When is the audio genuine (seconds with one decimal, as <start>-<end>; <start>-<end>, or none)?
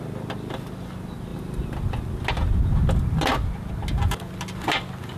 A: 0.0-5.2